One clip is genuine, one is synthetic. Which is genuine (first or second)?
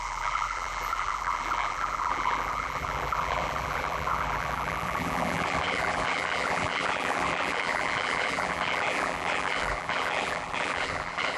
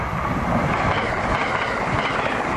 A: second